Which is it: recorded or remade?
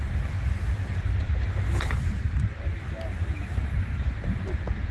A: recorded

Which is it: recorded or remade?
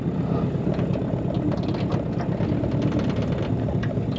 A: recorded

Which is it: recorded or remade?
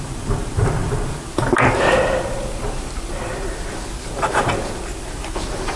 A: remade